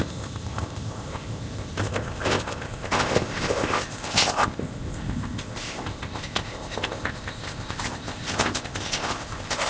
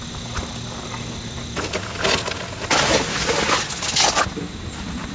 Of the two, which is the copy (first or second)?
first